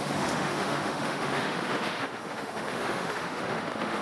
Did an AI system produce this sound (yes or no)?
yes